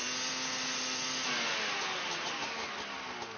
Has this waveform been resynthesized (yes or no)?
no